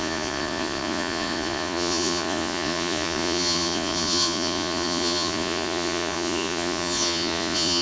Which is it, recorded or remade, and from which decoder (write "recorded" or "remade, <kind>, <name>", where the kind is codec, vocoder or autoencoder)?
remade, vocoder, Vocos